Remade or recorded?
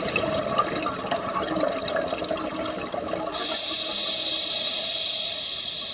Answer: recorded